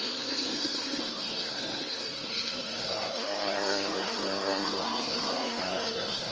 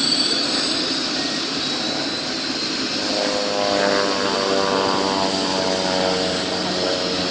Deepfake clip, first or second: first